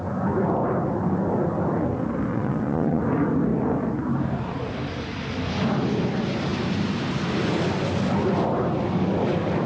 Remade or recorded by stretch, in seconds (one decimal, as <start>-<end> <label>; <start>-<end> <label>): 0.0-2.3 recorded; 2.3-3.0 remade; 3.0-9.7 recorded